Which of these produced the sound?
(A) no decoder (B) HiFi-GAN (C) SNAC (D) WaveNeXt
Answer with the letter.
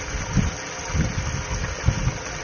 A